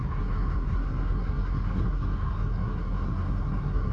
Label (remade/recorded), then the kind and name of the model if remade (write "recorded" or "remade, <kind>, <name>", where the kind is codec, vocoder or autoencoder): remade, codec, SNAC